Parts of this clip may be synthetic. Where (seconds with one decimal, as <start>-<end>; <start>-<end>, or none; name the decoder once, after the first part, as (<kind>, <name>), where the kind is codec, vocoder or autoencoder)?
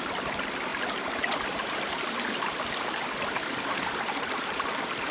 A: none